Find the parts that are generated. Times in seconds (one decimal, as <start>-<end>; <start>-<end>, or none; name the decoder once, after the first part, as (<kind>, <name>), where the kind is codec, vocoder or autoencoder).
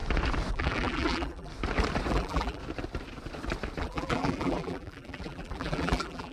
0.5-1.5 (vocoder, BigVGAN v2); 2.1-2.6; 3.8-6.3